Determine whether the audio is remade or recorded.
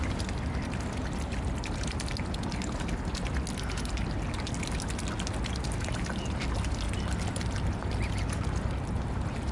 recorded